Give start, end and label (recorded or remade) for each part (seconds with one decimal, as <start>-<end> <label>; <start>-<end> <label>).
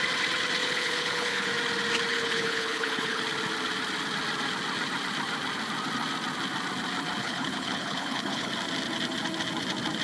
0.0-0.6 recorded; 0.6-1.5 remade; 1.5-2.1 recorded; 2.1-3.2 remade; 3.2-7.2 recorded; 7.2-8.5 remade; 8.5-10.0 recorded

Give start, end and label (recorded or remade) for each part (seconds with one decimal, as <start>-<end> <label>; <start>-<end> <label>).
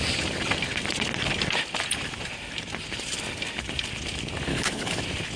0.0-4.5 recorded; 4.5-5.0 remade; 5.0-5.4 recorded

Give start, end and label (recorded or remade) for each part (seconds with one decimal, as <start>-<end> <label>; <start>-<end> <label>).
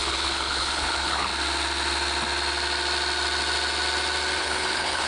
0.0-1.3 remade; 1.3-4.4 recorded; 4.4-5.1 remade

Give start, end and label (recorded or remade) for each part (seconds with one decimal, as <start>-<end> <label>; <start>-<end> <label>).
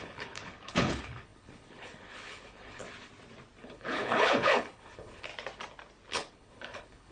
0.0-2.8 remade; 2.8-3.6 recorded; 3.6-5.3 remade; 5.3-6.1 recorded; 6.1-7.1 remade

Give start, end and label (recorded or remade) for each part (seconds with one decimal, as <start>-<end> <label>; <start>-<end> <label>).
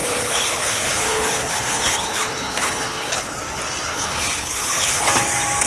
0.0-3.4 remade; 3.4-3.9 recorded; 3.9-5.1 remade; 5.1-5.7 recorded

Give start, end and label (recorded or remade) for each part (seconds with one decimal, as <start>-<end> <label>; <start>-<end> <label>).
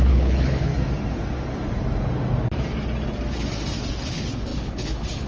0.0-0.7 remade; 0.7-3.9 recorded; 3.9-5.3 remade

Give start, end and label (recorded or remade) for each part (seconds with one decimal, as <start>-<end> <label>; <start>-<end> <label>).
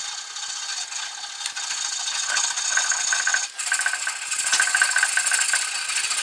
0.0-6.2 recorded